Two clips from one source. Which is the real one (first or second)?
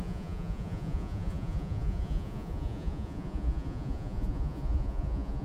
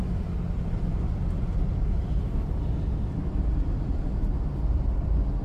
second